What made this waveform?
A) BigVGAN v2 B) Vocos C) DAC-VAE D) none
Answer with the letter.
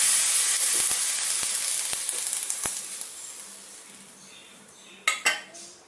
D